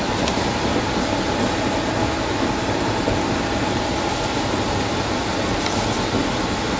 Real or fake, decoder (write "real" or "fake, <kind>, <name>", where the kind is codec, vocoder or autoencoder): real